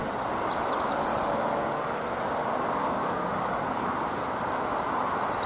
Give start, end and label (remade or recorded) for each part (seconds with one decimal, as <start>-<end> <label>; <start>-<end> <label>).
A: 0.0-1.1 recorded; 1.1-2.0 remade; 2.0-2.8 recorded; 2.8-4.2 remade; 4.2-5.5 recorded